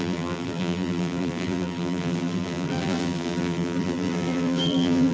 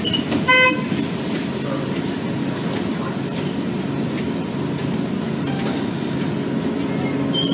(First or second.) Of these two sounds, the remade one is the first